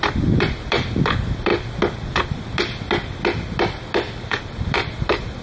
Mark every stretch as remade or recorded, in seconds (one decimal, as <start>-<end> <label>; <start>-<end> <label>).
0.0-1.5 remade; 1.5-4.6 recorded; 4.6-5.4 remade